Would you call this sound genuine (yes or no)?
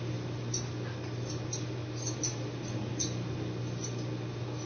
yes